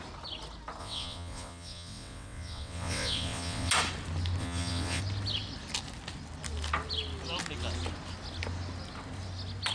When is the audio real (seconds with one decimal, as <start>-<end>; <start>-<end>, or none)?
0.0-0.8; 3.7-4.4; 5.0-9.7